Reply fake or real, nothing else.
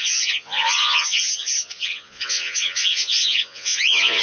fake